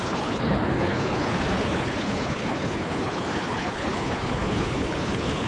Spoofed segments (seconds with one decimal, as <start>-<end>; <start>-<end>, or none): 0.0-5.5